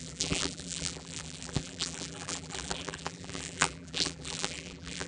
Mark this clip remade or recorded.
remade